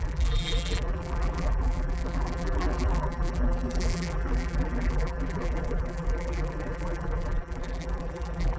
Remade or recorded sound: remade